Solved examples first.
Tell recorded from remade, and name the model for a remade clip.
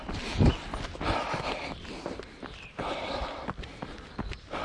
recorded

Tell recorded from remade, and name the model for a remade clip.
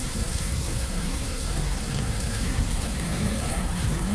remade, codec, SNAC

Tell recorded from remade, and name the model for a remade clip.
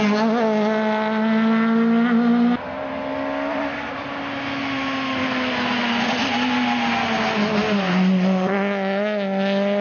recorded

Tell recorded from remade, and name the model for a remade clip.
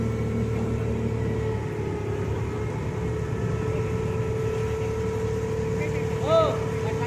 recorded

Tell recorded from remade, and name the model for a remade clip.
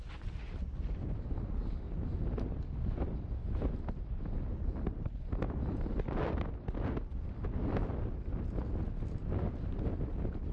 recorded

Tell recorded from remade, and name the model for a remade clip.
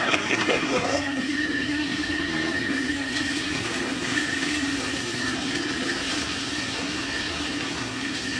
remade, codec, SNAC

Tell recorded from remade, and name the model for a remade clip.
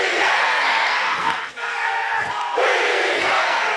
remade, codec, SNAC